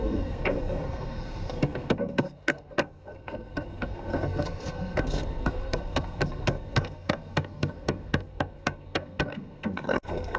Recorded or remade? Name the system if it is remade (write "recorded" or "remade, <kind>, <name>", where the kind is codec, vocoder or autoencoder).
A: remade, codec, SNAC